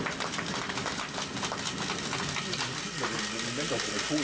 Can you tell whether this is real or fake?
real